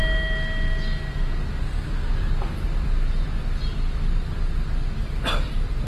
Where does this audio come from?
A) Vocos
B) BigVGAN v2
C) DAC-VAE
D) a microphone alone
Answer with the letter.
D